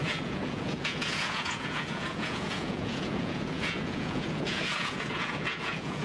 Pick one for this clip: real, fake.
fake